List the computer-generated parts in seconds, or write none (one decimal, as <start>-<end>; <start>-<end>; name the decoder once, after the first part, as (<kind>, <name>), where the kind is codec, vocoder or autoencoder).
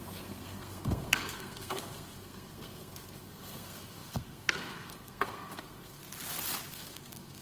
0.0-6.0 (codec, SNAC); 6.7-7.4